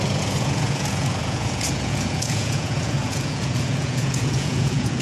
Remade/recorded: remade